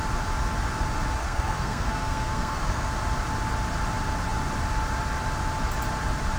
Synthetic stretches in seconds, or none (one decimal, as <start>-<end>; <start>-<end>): 1.2-2.9